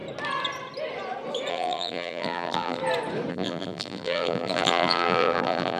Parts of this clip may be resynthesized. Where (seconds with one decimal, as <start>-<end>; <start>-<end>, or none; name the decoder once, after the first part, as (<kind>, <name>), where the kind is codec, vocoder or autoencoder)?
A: 1.5-2.8 (vocoder, BigVGAN v2); 3.3-5.8